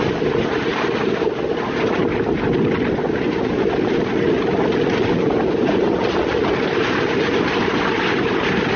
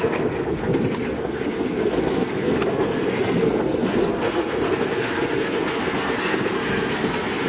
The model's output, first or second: second